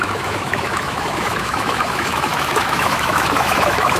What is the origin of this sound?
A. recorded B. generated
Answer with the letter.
B